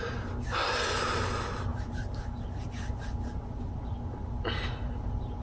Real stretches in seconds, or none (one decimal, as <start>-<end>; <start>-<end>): 0.0-5.4